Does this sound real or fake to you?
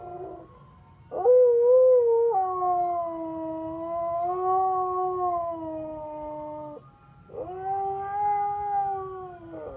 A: real